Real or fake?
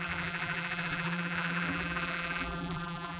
fake